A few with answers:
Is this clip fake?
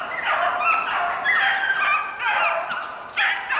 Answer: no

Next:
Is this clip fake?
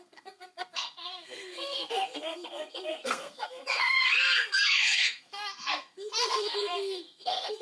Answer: yes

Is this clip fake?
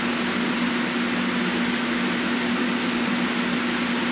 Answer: no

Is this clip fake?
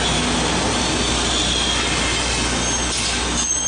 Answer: no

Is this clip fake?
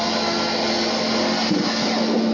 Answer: no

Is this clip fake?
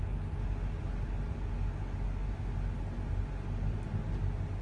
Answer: no